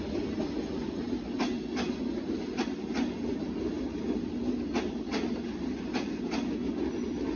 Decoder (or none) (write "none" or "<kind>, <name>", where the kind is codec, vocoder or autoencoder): none